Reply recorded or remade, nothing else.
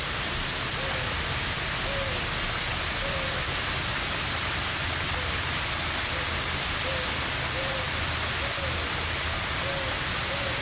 recorded